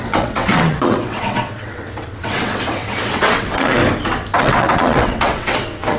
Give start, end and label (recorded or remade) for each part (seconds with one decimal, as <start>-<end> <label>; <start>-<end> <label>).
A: 0.0-3.8 remade; 3.8-4.4 recorded; 4.4-6.0 remade